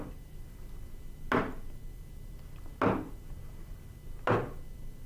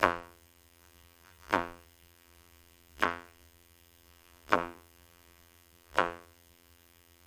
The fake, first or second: second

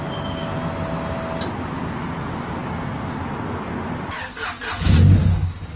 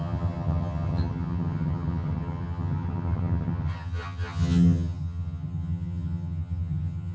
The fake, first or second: second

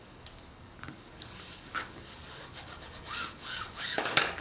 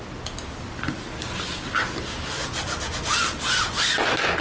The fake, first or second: first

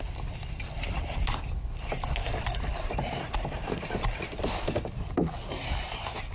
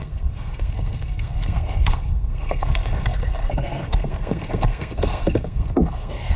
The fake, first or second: second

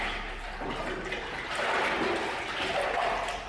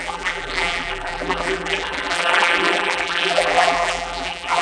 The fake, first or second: second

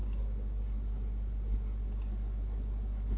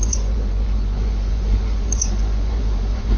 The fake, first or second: second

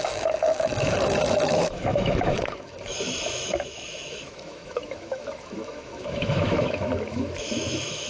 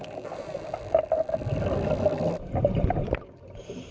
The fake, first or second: first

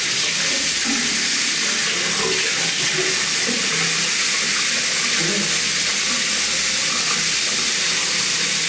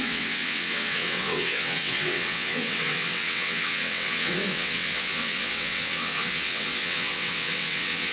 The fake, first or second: second